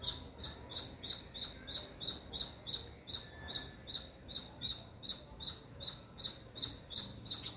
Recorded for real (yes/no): yes